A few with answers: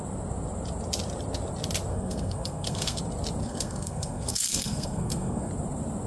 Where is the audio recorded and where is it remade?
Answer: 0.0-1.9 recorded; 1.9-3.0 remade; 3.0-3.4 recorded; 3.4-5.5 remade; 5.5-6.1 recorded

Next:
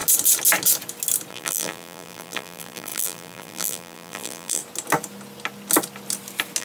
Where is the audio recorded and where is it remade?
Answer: 0.0-1.3 recorded; 1.3-4.6 remade; 4.6-6.6 recorded

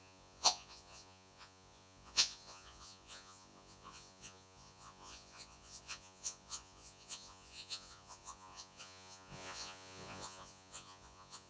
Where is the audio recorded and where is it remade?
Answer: 0.0-11.5 remade

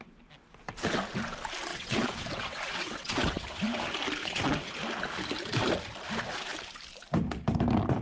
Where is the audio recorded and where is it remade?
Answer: 0.0-1.7 recorded; 1.7-3.8 remade; 3.8-4.2 recorded; 4.2-4.7 remade; 4.7-8.0 recorded

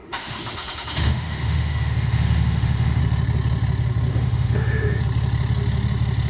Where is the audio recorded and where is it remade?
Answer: 0.0-3.0 remade; 3.0-4.1 recorded; 4.1-5.0 remade; 5.0-6.3 recorded

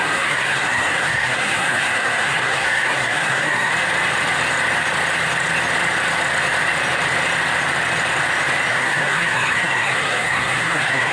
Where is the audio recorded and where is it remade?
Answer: 0.0-3.7 remade; 3.7-8.7 recorded; 8.7-11.1 remade